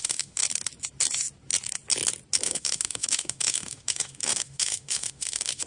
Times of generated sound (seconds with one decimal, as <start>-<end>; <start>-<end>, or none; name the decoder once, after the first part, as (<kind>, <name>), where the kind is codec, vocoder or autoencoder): 0.0-0.4 (autoencoder, DAC-VAE); 2.4-5.7